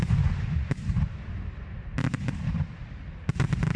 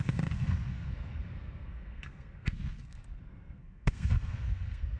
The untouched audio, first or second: first